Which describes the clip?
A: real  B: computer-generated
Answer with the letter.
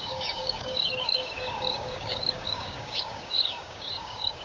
B